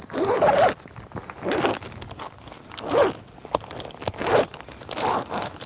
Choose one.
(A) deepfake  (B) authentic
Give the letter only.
A